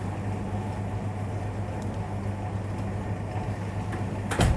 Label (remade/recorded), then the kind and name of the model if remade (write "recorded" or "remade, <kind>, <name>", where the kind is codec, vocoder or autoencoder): recorded